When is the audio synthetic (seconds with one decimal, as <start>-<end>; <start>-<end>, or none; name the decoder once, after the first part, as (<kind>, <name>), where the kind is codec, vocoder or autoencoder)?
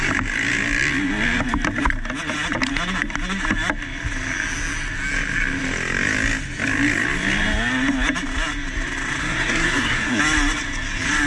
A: 9.2-10.2 (codec, SNAC)